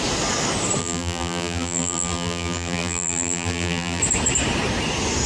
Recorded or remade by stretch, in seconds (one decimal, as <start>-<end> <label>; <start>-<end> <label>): 0.0-0.8 recorded; 0.8-4.0 remade; 4.0-5.3 recorded